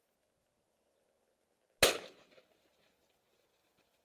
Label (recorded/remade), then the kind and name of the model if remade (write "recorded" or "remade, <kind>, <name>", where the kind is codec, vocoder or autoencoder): recorded